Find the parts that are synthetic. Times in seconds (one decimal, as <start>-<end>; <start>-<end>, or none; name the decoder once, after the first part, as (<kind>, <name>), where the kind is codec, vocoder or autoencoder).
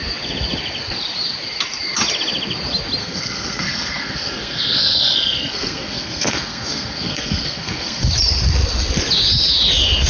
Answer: 3.0-8.1 (codec, SNAC)